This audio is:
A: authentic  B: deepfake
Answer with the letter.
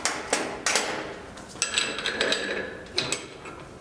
A